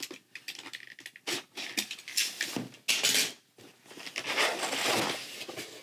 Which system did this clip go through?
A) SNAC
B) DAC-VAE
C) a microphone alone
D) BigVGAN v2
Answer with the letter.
C